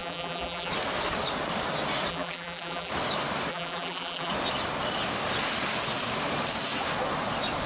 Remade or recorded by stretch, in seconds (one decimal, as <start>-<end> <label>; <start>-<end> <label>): 0.0-0.7 remade; 0.7-2.1 recorded; 2.1-2.9 remade; 2.9-3.5 recorded; 3.5-4.3 remade; 4.3-7.7 recorded